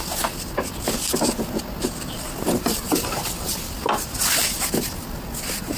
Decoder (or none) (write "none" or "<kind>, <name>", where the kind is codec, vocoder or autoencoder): none